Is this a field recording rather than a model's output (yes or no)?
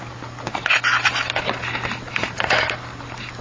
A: yes